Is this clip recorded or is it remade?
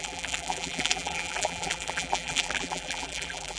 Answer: remade